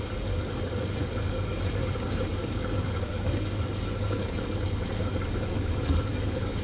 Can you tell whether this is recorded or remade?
remade